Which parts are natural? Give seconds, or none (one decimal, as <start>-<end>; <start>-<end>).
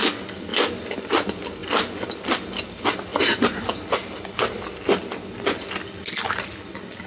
0.0-7.1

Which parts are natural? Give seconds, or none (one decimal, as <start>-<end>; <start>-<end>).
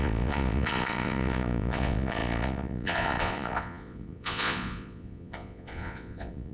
none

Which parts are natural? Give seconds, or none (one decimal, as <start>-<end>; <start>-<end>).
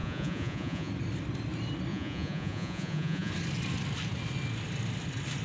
0.9-1.9; 3.3-5.4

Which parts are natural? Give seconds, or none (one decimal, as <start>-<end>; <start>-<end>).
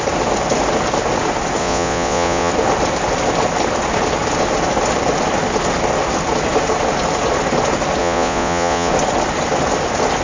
0.0-1.6; 2.5-8.0; 8.9-10.2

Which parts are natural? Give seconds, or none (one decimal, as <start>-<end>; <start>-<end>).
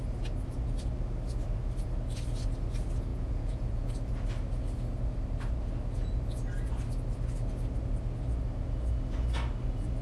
0.0-3.1; 3.9-10.0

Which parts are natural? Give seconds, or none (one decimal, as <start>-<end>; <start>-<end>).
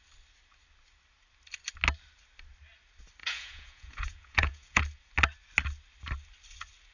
0.0-3.2; 4.8-6.9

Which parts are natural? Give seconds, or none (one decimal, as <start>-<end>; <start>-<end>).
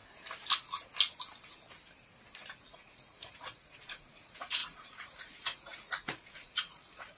0.0-2.6